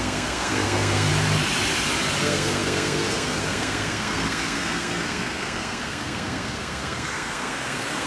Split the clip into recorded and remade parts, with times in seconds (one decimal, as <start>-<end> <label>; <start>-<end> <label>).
0.0-1.1 remade; 1.1-2.2 recorded; 2.2-8.1 remade